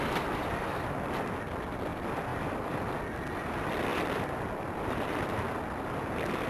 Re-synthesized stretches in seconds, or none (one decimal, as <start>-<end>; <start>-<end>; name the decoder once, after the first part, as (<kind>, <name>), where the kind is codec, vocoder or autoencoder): 1.9-2.9 (vocoder, BigVGAN v2); 3.9-6.5